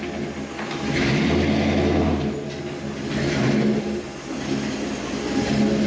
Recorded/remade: recorded